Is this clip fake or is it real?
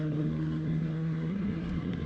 fake